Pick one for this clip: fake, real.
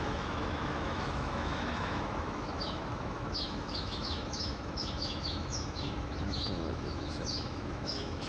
fake